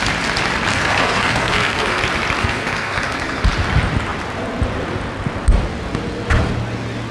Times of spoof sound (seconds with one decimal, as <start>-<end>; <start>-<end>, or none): 0.7-2.0; 2.4-3.4